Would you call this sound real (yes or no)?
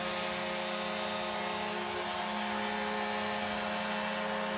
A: yes